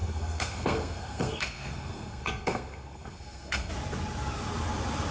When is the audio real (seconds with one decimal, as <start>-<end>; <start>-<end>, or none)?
3.7-5.1